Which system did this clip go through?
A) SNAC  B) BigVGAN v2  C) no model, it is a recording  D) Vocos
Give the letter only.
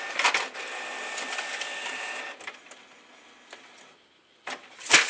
C